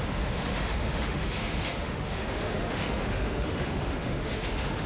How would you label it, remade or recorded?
remade